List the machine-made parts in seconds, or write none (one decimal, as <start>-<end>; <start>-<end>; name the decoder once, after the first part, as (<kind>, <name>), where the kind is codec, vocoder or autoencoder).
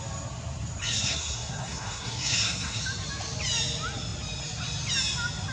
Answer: 0.8-2.8 (codec, SNAC)